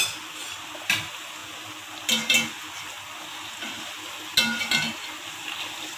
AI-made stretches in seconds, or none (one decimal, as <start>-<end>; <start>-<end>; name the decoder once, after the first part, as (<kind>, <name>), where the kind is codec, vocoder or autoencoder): none